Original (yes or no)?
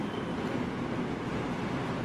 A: yes